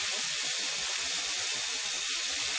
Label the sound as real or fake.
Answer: real